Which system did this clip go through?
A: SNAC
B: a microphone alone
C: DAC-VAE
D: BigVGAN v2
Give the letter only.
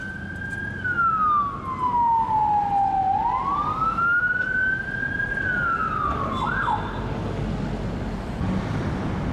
B